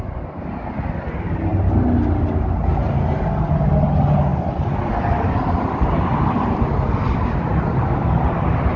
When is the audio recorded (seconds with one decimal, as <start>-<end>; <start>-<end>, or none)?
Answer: 0.0-8.8

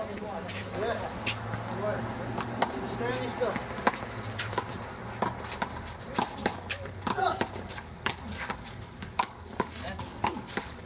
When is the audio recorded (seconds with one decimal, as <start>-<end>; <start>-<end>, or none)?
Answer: 0.0-6.4

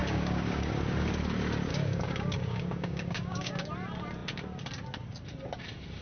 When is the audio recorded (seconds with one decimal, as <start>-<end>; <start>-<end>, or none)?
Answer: 0.7-1.7; 3.7-6.0

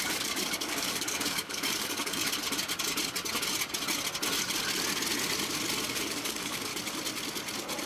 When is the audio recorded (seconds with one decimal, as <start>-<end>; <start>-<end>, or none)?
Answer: 2.2-5.9; 6.7-7.9

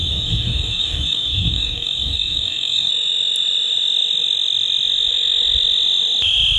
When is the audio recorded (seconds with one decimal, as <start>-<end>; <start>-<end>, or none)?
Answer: 2.9-6.6

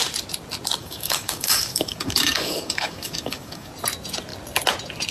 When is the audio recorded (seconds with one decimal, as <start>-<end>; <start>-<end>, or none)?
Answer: 0.0-0.8; 3.7-5.1

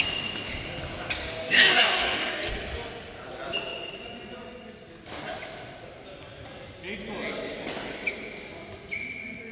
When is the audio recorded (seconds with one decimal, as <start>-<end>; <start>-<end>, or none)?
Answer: 0.0-1.4; 2.5-9.5